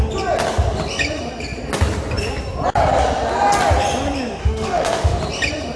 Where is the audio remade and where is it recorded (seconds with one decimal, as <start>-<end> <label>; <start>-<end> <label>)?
0.0-4.4 recorded; 4.4-5.2 remade; 5.2-5.8 recorded

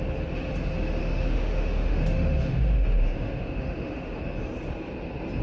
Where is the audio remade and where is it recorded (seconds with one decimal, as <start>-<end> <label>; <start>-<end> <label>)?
0.0-1.0 recorded; 1.0-4.2 remade; 4.2-5.4 recorded

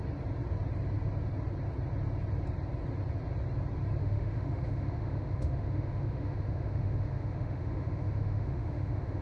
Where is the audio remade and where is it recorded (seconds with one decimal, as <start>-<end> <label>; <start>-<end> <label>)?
0.0-4.0 recorded; 4.0-9.2 remade

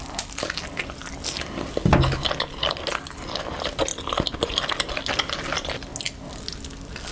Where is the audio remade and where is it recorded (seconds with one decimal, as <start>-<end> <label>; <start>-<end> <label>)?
0.0-7.1 recorded

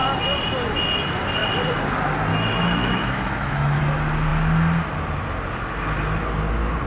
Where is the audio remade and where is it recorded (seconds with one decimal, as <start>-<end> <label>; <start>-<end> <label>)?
0.0-2.3 recorded; 2.3-3.8 remade; 3.8-6.9 recorded